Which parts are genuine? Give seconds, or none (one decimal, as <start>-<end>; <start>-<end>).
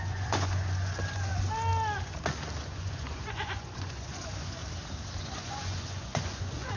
1.3-2.6; 4.6-5.2